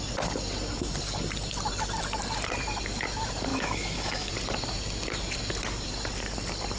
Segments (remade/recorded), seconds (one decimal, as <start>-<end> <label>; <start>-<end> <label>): 0.0-3.5 recorded; 3.5-4.3 remade; 4.3-6.8 recorded